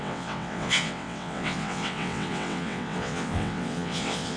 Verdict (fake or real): fake